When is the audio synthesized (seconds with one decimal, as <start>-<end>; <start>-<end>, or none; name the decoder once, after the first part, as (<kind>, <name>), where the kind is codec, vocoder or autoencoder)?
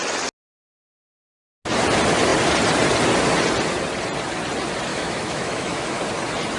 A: 4.9-6.0 (autoencoder, DAC-VAE)